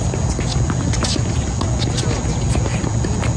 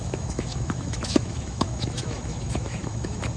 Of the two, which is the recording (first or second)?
first